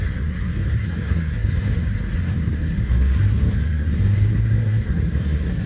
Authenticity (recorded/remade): remade